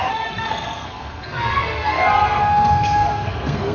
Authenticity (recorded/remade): remade